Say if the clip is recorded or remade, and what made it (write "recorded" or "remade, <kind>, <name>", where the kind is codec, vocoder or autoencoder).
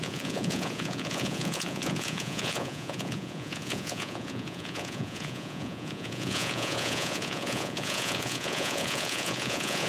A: remade, vocoder, Vocos